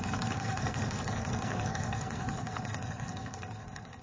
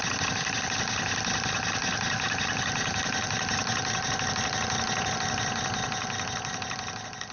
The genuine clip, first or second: second